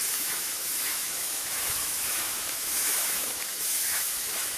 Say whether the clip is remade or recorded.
remade